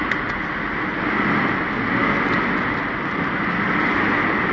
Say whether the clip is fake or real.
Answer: real